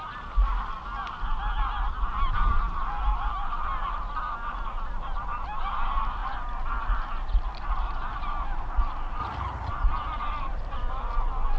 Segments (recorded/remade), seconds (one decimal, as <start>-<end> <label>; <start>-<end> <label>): 0.0-9.2 recorded; 9.2-9.7 remade; 9.7-11.6 recorded

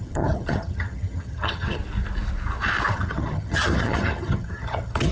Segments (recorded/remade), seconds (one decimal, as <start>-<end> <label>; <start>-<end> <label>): 0.0-1.8 remade; 1.8-2.9 recorded; 2.9-5.1 remade